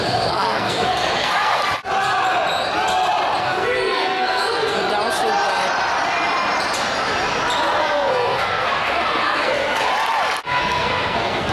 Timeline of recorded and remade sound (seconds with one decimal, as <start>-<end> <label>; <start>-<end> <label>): 0.0-1.6 remade; 1.6-3.4 recorded; 3.4-4.8 remade; 4.8-7.8 recorded; 7.8-9.9 remade; 9.9-10.4 recorded; 10.4-11.5 remade